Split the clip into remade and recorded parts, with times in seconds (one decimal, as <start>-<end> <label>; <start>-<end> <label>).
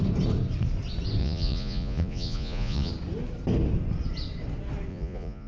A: 0.0-1.2 recorded; 1.2-2.9 remade; 2.9-4.9 recorded; 4.9-5.5 remade